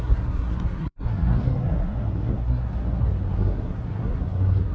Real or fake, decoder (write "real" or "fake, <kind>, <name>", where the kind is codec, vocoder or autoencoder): fake, codec, SNAC